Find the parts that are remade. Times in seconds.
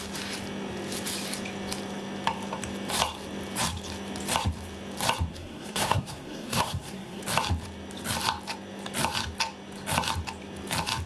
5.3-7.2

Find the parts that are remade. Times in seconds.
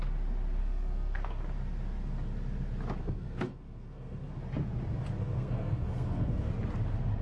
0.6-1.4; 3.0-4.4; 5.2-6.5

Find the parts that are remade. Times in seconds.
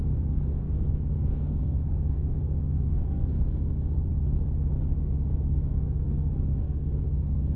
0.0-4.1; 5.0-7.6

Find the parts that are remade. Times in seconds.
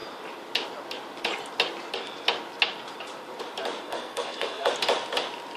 3.8-4.7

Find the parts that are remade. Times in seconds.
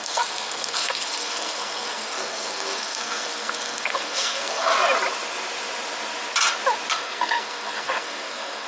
0.0-4.7; 6.9-8.7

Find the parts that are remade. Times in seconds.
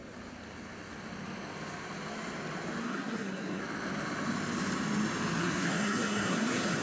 2.8-3.6; 5.4-6.8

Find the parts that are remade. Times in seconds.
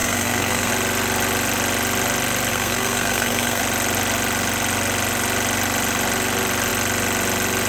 0.0-0.7; 2.5-3.6